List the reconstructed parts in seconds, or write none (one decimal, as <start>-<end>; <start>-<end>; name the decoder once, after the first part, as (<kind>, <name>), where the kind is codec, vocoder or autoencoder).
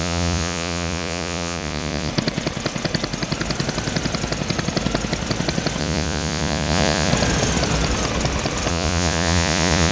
0.0-2.1 (vocoder, Vocos); 5.8-7.1; 8.7-9.9